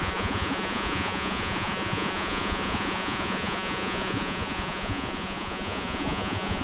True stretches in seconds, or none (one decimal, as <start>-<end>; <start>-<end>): none